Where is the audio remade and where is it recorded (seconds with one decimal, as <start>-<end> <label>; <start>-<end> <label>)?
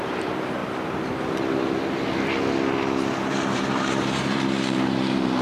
0.0-0.6 remade; 0.6-3.3 recorded; 3.3-5.4 remade